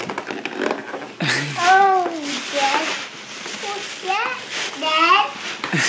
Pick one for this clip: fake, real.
real